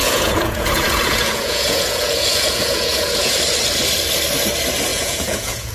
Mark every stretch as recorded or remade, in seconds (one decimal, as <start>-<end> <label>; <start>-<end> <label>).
0.0-3.4 remade; 3.4-4.9 recorded; 4.9-5.7 remade